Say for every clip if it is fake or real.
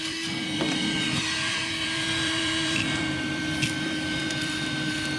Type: fake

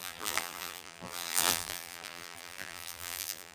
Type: fake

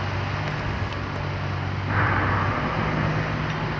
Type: real